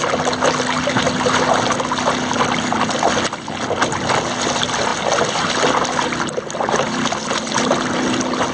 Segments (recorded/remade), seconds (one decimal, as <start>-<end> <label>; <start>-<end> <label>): 0.0-8.5 recorded